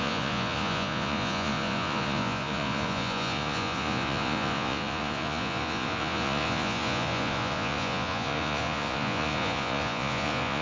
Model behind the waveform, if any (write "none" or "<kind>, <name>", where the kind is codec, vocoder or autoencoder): vocoder, Vocos